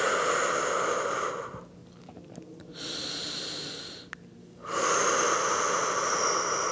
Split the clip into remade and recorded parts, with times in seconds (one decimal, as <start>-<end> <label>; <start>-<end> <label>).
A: 0.0-4.4 recorded; 4.4-5.0 remade; 5.0-6.7 recorded